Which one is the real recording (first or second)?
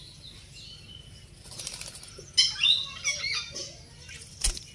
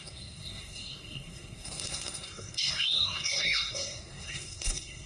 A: first